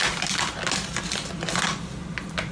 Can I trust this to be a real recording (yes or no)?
yes